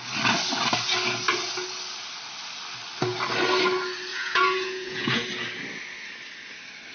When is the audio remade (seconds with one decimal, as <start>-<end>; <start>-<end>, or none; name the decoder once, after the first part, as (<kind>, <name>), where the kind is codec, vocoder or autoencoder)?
4.1-5.3 (vocoder, Vocos)